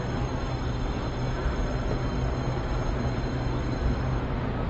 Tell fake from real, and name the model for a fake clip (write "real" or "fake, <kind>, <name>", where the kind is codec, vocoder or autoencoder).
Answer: real